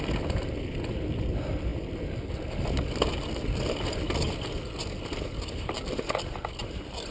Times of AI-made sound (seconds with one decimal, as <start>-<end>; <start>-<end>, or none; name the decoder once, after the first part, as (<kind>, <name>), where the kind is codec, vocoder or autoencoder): none

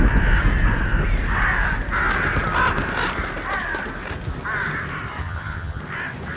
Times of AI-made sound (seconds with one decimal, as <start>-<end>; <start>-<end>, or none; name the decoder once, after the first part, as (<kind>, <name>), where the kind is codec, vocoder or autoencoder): 5.2-5.8 (vocoder, HiFi-GAN)

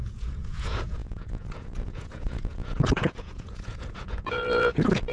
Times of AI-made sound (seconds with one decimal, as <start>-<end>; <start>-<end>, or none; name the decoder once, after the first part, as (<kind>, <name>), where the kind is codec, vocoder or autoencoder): 0.0-5.1 (vocoder, Vocos)

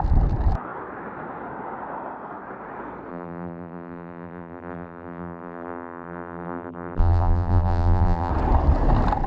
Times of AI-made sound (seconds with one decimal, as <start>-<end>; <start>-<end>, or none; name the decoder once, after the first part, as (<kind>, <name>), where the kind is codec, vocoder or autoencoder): 3.1-8.3 (vocoder, BigVGAN v2)

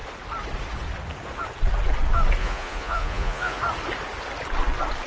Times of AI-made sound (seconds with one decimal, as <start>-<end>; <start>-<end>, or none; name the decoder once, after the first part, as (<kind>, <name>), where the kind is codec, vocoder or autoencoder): 2.4-3.6 (vocoder, Vocos)

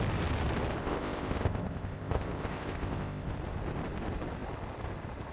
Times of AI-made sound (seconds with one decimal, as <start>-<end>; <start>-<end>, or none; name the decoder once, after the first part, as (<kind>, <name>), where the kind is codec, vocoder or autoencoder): 0.8-3.3 (codec, ZipCodec)

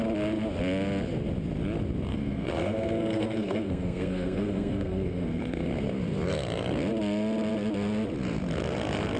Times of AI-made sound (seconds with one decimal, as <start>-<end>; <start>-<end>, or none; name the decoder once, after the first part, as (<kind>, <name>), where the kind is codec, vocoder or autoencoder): 2.1-5.7 (codec, SNAC)